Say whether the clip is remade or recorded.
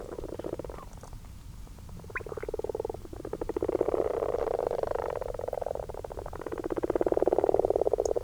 remade